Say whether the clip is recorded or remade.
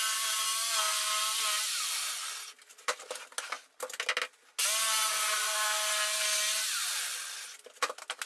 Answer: recorded